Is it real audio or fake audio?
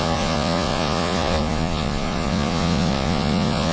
fake